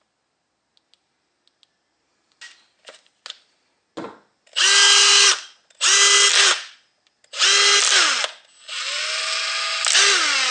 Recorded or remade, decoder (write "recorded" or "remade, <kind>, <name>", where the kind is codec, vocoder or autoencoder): recorded